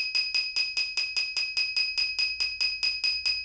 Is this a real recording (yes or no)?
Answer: yes